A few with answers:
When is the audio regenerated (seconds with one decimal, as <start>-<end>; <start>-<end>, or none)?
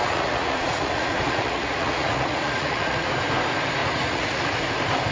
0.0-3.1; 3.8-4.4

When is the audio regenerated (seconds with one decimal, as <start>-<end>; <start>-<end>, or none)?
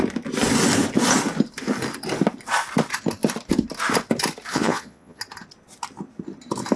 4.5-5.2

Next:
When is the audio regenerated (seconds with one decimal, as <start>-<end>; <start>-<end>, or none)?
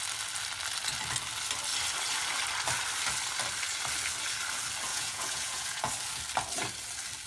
4.9-5.9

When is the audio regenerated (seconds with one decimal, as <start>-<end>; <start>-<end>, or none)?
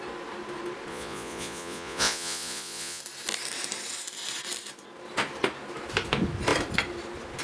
0.9-3.0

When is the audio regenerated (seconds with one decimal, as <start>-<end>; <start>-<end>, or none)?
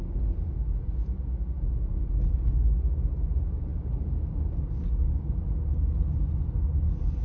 0.4-2.5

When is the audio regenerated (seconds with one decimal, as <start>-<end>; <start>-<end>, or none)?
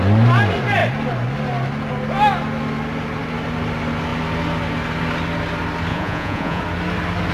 5.9-6.6